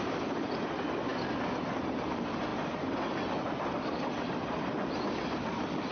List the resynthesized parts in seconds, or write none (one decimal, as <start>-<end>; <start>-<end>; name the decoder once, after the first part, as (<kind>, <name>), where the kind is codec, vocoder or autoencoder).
none